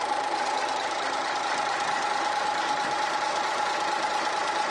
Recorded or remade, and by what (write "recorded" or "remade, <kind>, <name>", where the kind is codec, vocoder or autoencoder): recorded